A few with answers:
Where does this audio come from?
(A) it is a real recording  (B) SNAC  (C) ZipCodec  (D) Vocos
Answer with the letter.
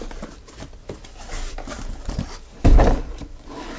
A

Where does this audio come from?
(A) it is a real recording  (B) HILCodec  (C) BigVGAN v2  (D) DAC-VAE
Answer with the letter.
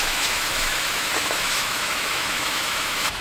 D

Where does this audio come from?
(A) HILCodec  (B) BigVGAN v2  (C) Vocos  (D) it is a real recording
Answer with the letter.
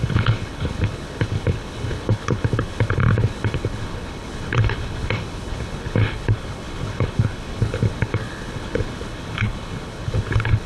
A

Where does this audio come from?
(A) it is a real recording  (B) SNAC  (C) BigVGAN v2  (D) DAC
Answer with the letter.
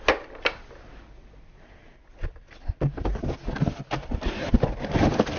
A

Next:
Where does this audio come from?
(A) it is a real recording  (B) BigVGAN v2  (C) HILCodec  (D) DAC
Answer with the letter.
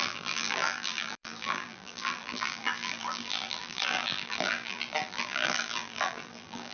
B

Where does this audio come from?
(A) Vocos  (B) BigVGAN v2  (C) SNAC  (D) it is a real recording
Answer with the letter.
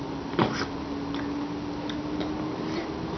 D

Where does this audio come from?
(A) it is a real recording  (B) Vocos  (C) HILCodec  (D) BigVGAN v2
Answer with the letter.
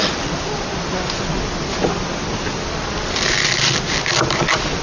A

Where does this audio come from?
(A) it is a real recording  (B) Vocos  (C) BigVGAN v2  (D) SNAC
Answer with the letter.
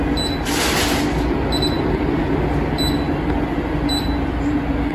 A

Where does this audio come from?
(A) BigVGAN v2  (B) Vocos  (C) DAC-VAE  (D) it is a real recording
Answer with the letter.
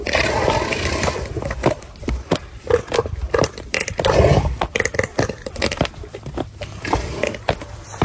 A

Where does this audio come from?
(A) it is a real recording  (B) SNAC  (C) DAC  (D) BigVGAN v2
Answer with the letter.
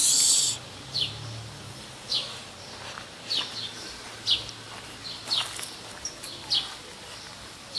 A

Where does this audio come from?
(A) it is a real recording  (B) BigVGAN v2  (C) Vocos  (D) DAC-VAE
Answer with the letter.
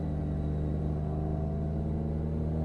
A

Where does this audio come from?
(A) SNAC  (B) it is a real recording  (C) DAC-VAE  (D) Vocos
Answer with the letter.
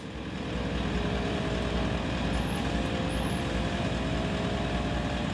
B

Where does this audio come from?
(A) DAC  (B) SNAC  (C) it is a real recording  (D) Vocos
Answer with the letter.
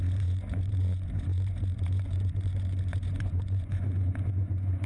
D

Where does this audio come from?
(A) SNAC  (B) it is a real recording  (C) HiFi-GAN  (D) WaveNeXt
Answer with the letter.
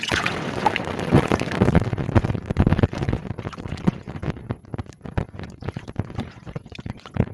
D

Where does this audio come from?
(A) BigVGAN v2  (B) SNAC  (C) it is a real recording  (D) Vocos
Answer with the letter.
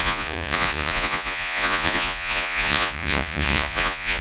D